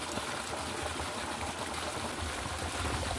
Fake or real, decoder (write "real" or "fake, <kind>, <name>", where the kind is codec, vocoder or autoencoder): real